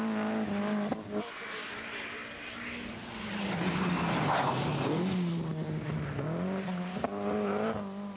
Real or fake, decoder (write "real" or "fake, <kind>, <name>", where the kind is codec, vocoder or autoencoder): real